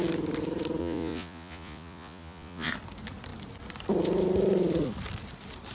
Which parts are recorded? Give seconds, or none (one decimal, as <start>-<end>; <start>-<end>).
0.0-0.8; 2.7-5.7